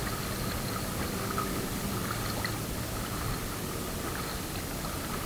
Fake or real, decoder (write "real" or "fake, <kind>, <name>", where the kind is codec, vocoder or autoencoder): real